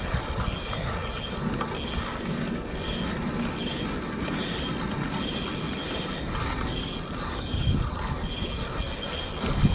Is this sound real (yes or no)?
yes